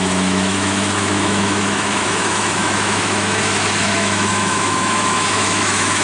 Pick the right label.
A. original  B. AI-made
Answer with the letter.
B